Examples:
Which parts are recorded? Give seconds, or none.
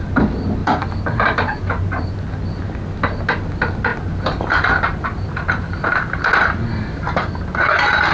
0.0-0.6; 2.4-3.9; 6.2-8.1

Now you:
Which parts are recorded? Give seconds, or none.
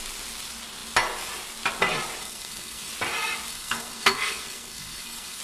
0.0-2.2; 2.9-3.5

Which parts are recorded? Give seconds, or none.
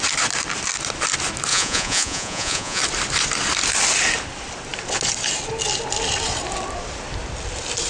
0.0-1.5; 2.8-7.9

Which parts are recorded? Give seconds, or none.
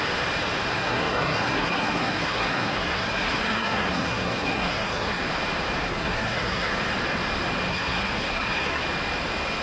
0.0-0.7; 5.2-5.9; 6.7-7.7; 8.8-9.6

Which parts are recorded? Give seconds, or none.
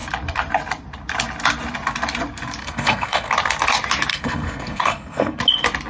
0.0-2.6; 3.3-4.1; 5.4-5.9